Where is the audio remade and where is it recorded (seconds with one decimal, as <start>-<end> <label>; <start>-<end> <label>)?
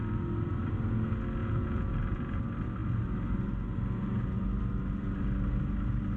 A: 0.0-1.4 recorded; 1.4-2.4 remade; 2.4-6.2 recorded